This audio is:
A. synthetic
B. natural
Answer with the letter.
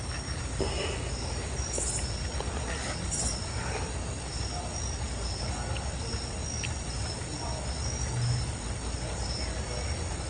B